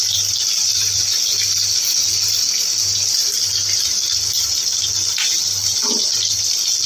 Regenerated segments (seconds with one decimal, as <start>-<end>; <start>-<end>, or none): none